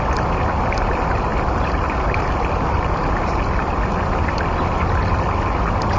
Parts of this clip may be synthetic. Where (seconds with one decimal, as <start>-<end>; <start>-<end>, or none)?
none